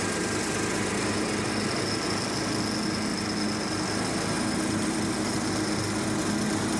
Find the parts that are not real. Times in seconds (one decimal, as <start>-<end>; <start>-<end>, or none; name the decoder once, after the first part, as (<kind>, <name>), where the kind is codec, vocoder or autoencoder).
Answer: none